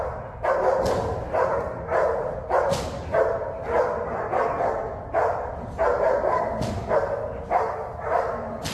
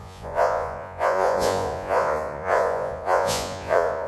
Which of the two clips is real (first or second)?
first